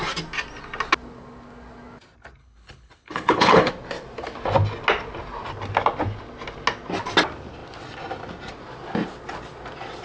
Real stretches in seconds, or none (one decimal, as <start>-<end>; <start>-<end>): 0.0-2.4; 3.7-10.0